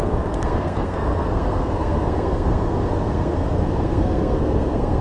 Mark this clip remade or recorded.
remade